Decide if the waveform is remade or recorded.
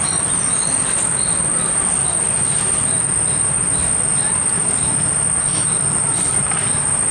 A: recorded